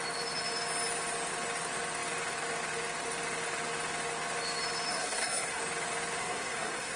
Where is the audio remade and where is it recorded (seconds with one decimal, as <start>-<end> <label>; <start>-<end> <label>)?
0.0-4.9 recorded; 4.9-5.6 remade; 5.6-6.2 recorded; 6.2-7.0 remade

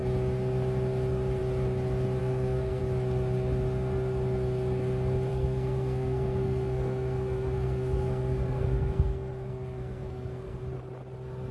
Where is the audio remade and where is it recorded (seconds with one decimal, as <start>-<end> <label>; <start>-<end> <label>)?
0.0-2.2 recorded; 2.2-2.8 remade; 2.8-5.3 recorded; 5.3-10.6 remade; 10.6-11.5 recorded

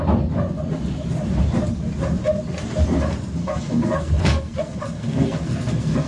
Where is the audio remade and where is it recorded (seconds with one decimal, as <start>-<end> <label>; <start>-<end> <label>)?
0.0-3.4 recorded; 3.4-6.1 remade